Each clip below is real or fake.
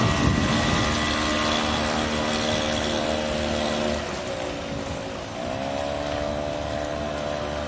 real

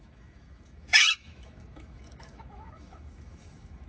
fake